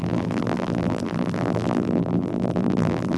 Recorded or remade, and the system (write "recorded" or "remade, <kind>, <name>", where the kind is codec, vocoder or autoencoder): remade, vocoder, BigVGAN v2